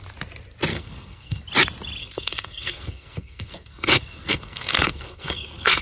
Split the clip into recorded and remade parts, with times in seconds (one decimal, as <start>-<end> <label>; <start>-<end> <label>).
0.0-0.7 recorded; 0.7-1.4 remade; 1.4-2.0 recorded; 2.0-5.8 remade